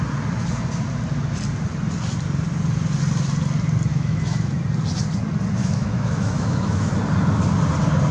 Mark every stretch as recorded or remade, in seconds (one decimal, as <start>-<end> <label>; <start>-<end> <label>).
0.0-3.9 recorded; 3.9-4.6 remade; 4.6-5.6 recorded; 5.6-6.9 remade; 6.9-8.1 recorded